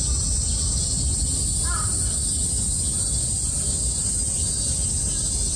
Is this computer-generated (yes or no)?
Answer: no